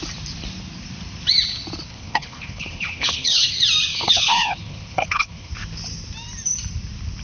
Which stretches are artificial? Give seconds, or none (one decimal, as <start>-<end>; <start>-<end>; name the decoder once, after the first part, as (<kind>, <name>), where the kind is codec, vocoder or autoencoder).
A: 1.9-3.5 (codec, HILCodec); 3.9-5.5